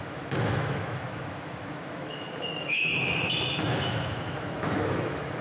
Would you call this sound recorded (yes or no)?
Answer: no